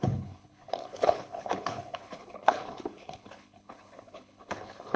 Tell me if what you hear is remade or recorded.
remade